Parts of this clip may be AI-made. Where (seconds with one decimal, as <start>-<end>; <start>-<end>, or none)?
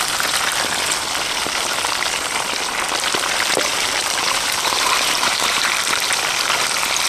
3.7-5.7